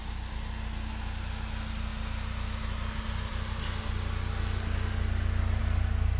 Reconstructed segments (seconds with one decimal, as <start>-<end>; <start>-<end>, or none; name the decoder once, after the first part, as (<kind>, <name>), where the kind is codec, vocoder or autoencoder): none